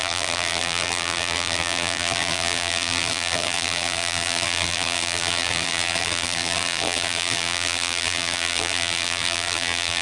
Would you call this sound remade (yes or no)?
yes